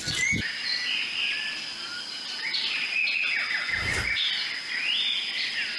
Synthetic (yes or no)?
no